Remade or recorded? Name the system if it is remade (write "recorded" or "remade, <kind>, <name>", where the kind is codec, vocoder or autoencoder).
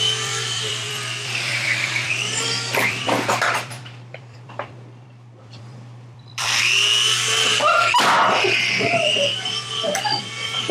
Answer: remade, vocoder, BigVGAN v2